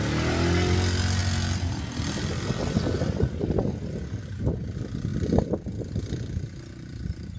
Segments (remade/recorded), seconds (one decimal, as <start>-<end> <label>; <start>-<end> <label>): 0.0-7.4 recorded